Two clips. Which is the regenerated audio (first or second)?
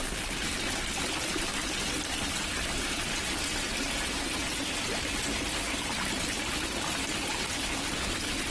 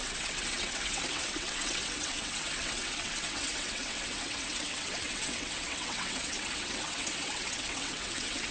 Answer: second